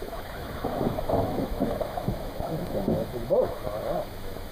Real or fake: fake